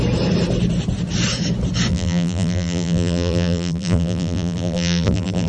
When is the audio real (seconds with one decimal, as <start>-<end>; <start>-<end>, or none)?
0.0-1.9